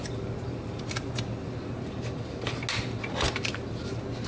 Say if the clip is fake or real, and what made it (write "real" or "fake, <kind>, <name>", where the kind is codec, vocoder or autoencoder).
real